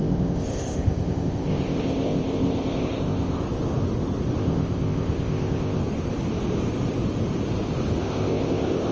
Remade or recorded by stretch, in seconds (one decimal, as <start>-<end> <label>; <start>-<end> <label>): 0.0-3.4 remade; 3.4-4.4 recorded; 4.4-5.8 remade; 5.8-8.0 recorded; 8.0-8.9 remade